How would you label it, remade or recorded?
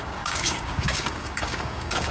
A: remade